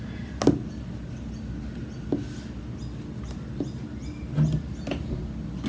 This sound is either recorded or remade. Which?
recorded